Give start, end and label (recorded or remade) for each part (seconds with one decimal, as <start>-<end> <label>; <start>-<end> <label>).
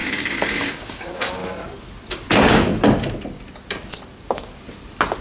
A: 0.0-1.4 remade; 1.4-2.1 recorded; 2.1-2.7 remade; 2.7-5.2 recorded